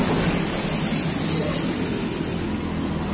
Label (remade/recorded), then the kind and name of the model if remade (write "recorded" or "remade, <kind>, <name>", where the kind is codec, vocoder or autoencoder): recorded